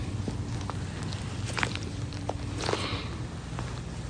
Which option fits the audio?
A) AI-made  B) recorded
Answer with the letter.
B